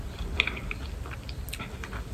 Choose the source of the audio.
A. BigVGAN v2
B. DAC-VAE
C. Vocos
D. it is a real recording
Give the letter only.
D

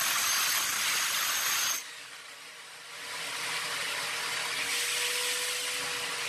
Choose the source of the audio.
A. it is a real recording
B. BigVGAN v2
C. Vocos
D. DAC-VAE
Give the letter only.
A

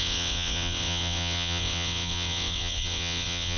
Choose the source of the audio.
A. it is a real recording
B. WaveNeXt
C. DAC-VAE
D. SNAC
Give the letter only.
B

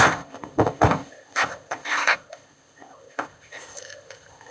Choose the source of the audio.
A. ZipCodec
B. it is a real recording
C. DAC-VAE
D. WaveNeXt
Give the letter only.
A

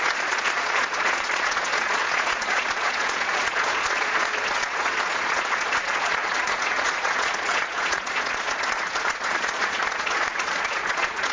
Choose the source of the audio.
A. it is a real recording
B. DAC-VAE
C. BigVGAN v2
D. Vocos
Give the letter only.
D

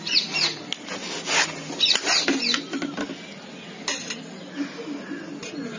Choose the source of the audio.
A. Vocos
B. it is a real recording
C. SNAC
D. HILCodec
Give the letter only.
B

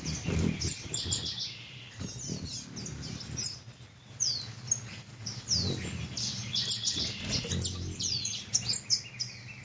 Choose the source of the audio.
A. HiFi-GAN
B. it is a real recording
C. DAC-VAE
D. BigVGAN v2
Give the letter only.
B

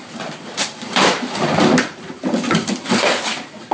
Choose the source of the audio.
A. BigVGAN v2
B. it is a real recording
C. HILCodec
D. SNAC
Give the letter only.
A